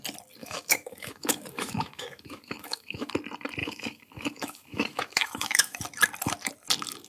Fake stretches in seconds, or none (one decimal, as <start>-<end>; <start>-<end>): 0.4-3.1; 3.6-5.8